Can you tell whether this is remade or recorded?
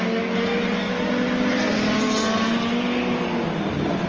recorded